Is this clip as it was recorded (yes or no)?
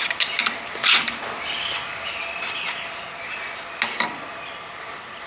yes